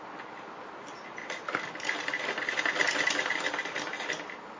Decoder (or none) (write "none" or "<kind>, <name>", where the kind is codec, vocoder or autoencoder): none